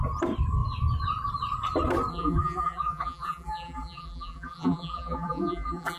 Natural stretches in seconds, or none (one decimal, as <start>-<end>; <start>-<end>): 0.0-2.1